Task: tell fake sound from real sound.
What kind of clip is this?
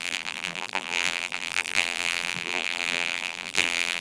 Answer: fake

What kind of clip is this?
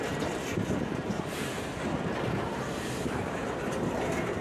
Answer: fake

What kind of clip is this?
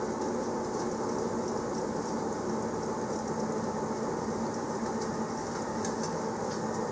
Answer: real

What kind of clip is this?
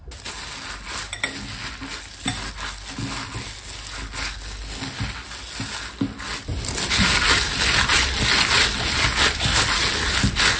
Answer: real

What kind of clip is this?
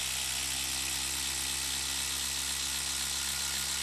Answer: real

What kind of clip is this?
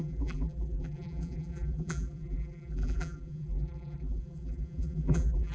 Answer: fake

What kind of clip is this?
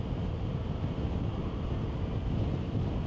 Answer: real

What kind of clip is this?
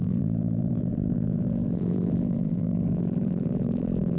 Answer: fake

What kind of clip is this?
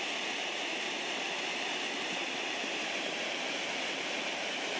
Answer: fake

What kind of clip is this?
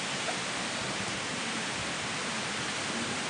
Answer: fake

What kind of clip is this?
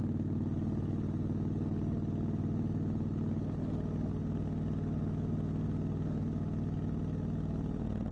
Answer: real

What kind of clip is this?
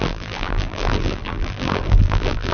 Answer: fake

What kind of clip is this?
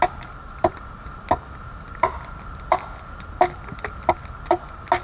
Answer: real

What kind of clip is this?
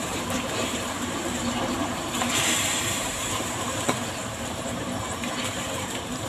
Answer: fake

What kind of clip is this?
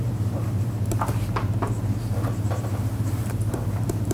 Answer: fake